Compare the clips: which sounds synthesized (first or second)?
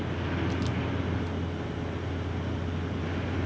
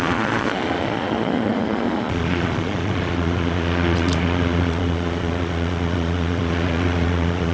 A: second